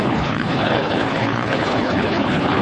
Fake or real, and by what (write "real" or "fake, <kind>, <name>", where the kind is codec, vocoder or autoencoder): fake, codec, HILCodec